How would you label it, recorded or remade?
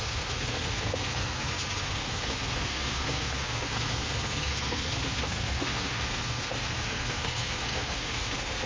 remade